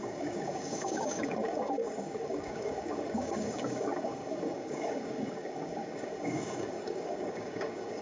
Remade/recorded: remade